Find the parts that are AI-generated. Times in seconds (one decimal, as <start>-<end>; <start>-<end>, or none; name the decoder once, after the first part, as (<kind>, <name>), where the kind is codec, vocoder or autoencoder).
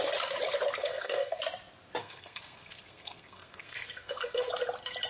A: 0.8-1.4 (codec, SNAC); 2.0-4.5